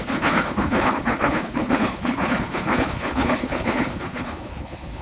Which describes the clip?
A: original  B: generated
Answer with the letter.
B